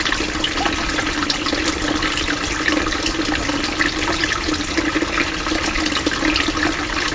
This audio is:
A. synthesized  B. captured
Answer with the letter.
B